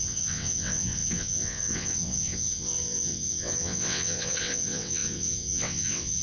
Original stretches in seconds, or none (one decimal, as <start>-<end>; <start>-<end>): none